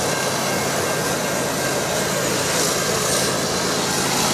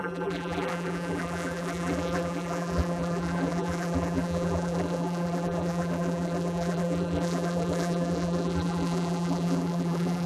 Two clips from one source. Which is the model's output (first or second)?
second